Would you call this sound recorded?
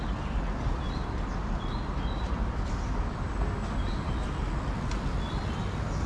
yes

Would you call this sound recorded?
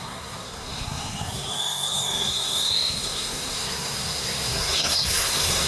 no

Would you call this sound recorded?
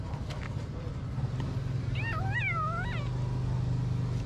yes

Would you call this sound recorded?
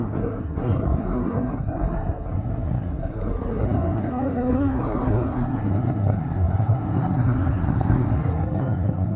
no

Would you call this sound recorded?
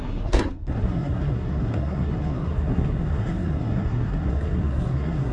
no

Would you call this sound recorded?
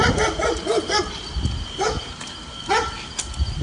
yes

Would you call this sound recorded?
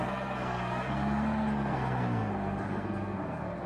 no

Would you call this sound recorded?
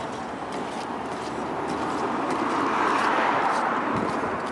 yes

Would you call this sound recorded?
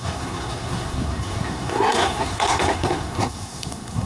no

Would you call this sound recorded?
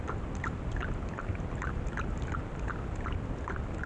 yes